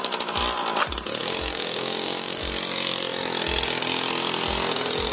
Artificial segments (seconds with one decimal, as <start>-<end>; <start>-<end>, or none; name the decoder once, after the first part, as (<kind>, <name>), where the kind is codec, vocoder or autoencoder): 1.2-2.4 (codec, DAC)